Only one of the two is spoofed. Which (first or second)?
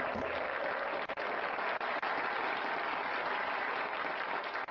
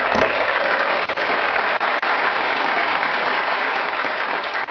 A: second